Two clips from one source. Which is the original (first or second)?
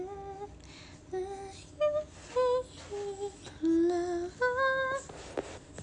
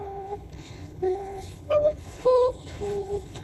first